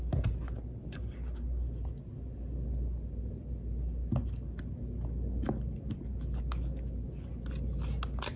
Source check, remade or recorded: recorded